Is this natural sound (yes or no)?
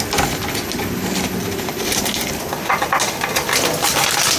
yes